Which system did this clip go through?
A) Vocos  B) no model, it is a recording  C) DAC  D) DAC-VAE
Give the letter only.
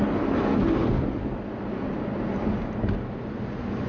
B